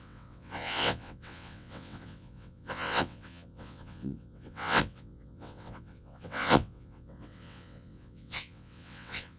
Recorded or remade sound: remade